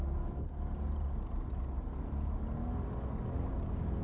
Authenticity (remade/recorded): recorded